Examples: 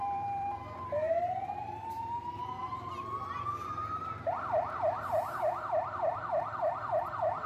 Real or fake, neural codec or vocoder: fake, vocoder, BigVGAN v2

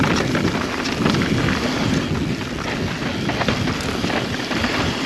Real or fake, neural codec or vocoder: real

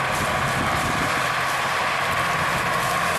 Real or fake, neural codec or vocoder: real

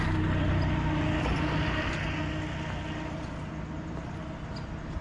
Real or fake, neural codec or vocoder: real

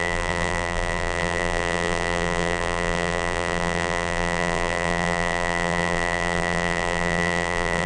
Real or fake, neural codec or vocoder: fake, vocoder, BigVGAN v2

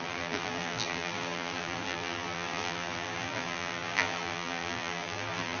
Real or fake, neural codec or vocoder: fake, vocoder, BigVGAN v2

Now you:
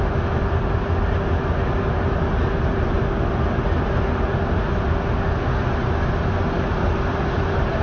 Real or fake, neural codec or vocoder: real